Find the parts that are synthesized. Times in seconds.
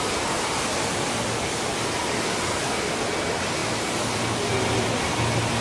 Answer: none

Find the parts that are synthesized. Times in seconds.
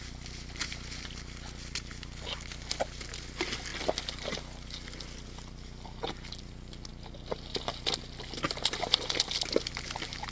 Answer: none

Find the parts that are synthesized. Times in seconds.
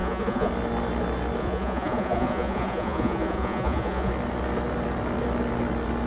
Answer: 0.0-0.5 (vocoder, Vocos); 1.4-4.1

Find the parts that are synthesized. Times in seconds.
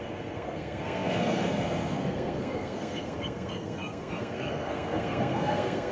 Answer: 0.0-5.9 (codec, SNAC)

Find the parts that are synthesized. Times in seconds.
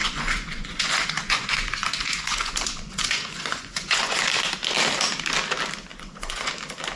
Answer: 0.0-4.2 (vocoder, Vocos); 5.9-6.5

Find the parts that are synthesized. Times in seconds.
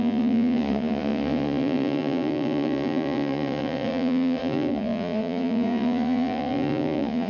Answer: 0.0-7.3 (vocoder, Vocos)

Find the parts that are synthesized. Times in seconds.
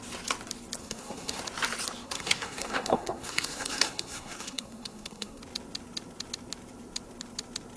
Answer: 0.8-1.4 (codec, SNAC); 2.0-5.4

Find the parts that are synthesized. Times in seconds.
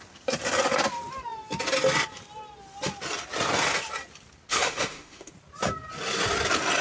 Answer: 4.5-5.3 (autoencoder, DAC-VAE)